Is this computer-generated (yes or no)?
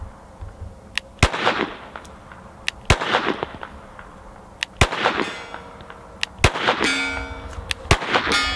no